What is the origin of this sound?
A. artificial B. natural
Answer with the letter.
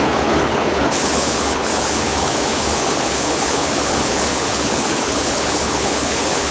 A